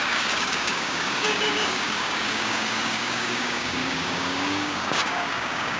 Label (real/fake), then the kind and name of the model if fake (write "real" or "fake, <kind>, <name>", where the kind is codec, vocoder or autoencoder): fake, codec, DAC